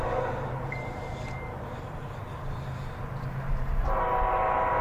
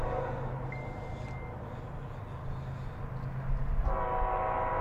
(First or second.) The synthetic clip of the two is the first